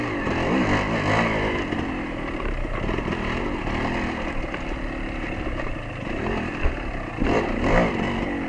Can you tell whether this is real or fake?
real